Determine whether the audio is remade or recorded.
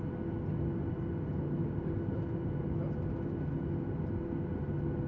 recorded